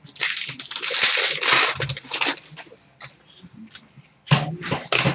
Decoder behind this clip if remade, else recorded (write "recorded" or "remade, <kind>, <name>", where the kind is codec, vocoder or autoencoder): recorded